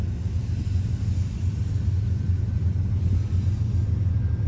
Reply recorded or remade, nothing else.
remade